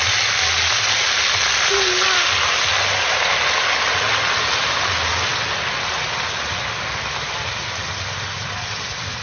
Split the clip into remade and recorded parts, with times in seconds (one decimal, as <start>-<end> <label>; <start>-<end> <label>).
0.0-9.2 recorded